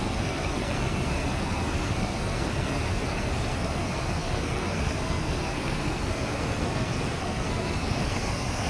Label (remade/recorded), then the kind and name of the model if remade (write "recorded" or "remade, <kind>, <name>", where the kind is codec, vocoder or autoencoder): remade, codec, SNAC